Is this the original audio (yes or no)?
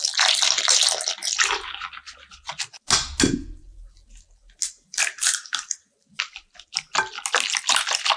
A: yes